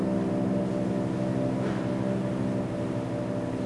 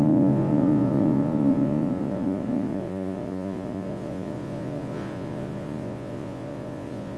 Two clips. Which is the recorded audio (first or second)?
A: first